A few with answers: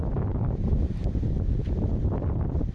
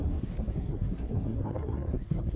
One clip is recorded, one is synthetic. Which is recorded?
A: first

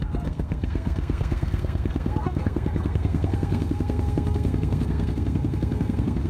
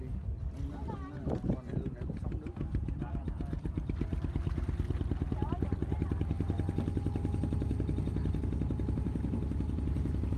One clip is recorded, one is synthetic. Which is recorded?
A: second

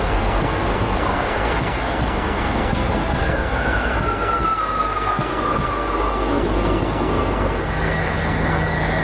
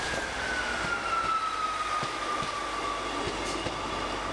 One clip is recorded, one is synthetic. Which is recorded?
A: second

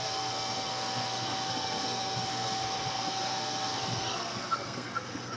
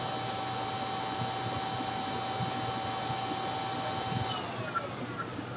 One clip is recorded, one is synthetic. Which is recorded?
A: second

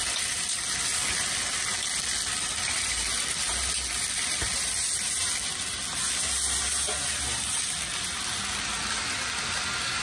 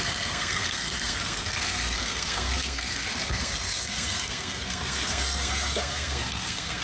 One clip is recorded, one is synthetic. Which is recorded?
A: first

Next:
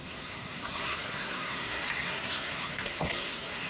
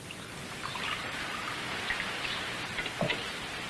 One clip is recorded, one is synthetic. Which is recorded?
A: second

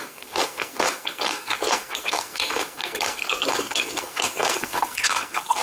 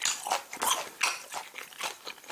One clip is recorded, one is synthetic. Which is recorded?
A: second